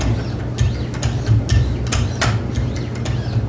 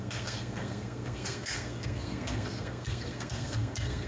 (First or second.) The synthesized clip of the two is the second